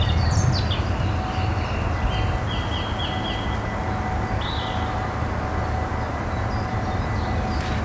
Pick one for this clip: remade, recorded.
recorded